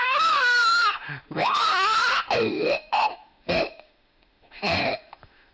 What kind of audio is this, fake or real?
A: fake